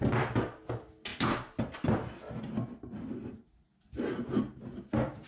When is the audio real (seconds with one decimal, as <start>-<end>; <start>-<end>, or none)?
0.0-5.3